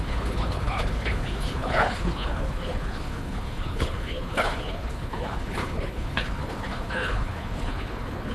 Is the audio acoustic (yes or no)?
no